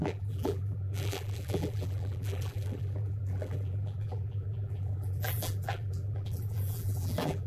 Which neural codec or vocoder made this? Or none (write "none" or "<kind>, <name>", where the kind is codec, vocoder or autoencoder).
vocoder, BigVGAN v2